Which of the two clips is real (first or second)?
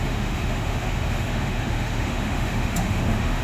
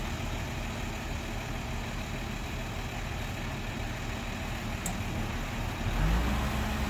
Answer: second